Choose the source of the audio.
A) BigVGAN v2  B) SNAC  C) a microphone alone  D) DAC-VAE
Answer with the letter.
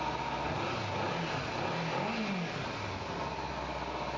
C